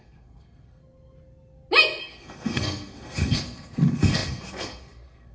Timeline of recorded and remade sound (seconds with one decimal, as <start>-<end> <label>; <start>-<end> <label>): 0.0-0.8 remade; 0.8-2.0 recorded; 2.0-5.3 remade